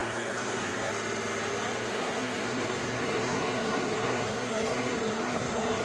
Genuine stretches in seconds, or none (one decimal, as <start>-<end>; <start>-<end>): 0.9-1.9